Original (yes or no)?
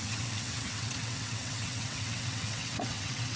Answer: no